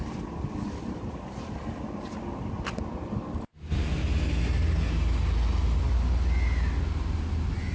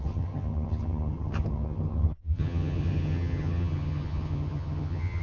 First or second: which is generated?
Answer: second